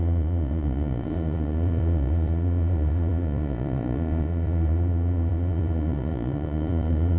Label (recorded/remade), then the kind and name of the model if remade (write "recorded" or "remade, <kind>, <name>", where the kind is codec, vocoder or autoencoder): remade, vocoder, Vocos